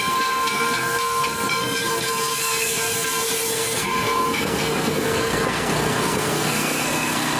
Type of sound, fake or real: fake